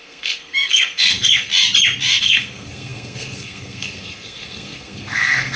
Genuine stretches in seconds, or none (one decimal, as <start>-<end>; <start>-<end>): 1.5-2.2